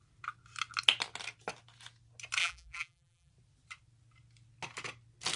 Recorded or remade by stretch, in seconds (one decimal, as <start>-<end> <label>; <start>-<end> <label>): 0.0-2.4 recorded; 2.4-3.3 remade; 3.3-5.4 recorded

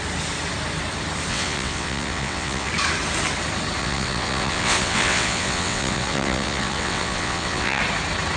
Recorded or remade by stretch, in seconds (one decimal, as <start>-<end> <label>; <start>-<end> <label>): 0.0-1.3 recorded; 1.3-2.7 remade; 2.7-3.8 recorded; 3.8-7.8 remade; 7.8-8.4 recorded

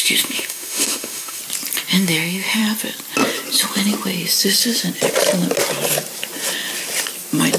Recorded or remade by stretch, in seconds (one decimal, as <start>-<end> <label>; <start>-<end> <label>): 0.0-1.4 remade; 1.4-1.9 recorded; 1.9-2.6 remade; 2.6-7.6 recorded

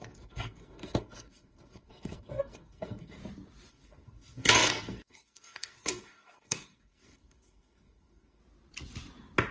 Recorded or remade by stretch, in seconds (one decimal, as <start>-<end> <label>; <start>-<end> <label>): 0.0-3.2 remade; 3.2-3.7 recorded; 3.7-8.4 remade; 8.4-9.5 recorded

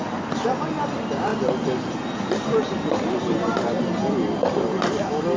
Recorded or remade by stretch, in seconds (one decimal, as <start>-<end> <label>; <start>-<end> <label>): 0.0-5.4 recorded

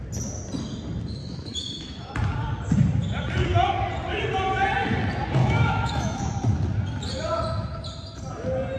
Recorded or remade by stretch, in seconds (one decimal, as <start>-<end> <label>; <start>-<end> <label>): 0.0-1.2 recorded; 1.2-2.1 remade; 2.1-5.4 recorded; 5.4-6.2 remade; 6.2-8.8 recorded

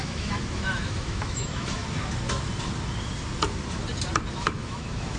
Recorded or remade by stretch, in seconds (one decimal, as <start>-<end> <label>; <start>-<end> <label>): 0.0-1.8 remade; 1.8-4.3 recorded; 4.3-5.2 remade

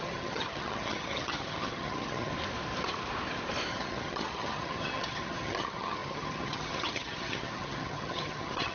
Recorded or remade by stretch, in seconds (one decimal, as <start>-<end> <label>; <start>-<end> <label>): 0.0-2.3 remade; 2.3-3.7 recorded; 3.7-8.7 remade